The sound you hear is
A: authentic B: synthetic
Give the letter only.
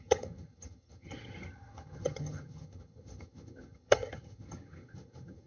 B